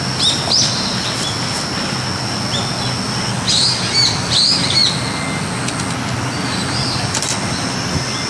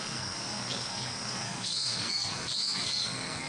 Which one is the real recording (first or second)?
first